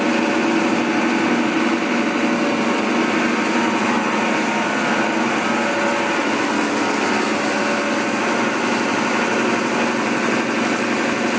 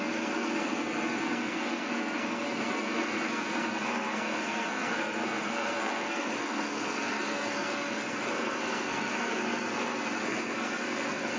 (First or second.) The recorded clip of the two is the first